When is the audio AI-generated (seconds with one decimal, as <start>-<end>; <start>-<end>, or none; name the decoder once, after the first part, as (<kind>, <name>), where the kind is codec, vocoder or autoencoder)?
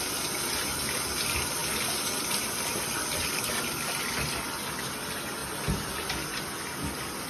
none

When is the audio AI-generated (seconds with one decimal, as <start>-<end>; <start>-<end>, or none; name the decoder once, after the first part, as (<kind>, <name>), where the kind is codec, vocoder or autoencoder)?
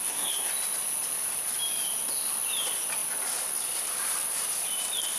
0.0-0.5 (codec, SNAC)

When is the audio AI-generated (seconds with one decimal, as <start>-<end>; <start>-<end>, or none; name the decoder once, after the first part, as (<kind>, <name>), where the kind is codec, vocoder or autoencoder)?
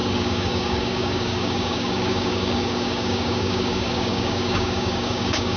0.0-5.6 (codec, DAC)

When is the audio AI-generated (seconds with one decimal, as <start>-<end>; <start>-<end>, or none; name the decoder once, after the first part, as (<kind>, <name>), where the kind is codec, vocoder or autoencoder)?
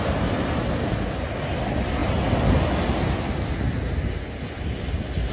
none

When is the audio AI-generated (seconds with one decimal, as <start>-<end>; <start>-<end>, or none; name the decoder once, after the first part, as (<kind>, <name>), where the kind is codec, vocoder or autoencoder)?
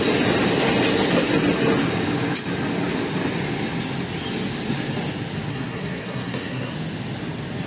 5.5-6.7 (codec, SNAC)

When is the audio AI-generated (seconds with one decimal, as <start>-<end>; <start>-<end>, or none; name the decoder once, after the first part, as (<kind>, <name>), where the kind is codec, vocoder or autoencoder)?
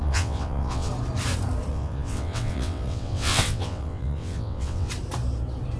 0.0-0.9 (vocoder, WaveNeXt); 1.7-4.9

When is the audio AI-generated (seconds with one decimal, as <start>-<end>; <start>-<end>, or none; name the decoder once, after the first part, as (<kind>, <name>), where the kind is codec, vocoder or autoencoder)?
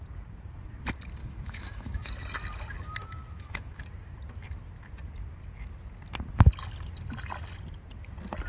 1.2-2.1 (autoencoder, DAC-VAE); 3.0-3.8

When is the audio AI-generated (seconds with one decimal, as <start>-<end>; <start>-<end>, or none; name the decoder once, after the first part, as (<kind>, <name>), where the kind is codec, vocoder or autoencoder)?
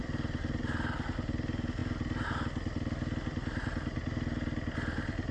0.0-0.6 (vocoder, BigVGAN v2)